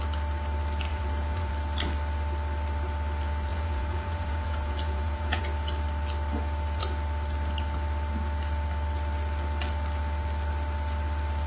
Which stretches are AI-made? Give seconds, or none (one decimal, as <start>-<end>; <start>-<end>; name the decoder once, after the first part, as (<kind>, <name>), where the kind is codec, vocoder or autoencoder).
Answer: 0.9-1.5 (vocoder, Vocos); 3.5-5.4